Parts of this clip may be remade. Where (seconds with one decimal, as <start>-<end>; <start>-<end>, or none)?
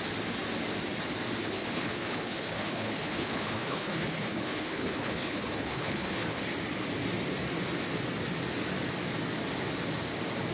1.4-6.4